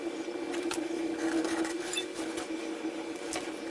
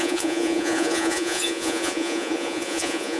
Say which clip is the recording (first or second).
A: first